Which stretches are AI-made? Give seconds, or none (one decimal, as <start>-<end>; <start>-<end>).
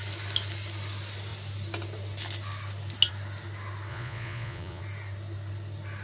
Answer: 3.9-4.8